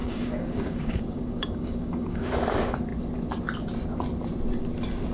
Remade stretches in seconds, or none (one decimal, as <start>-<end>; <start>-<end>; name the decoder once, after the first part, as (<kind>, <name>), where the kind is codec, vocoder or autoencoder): 0.0-2.3 (codec, DAC)